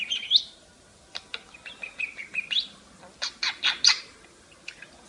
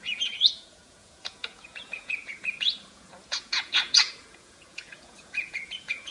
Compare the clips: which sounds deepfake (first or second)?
second